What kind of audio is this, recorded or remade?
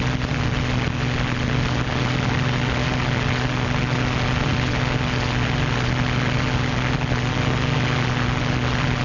recorded